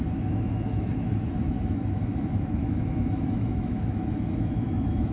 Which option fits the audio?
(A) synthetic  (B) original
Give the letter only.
A